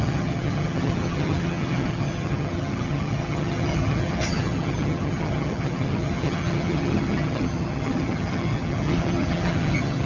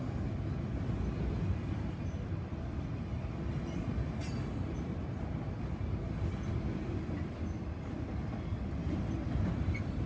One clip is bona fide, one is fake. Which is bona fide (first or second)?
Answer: second